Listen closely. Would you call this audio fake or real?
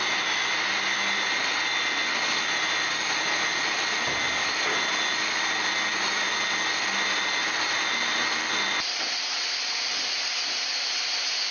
real